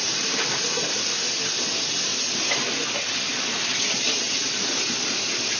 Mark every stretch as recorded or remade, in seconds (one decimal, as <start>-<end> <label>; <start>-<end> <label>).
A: 0.0-5.6 recorded